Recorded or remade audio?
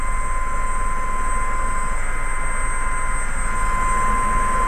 recorded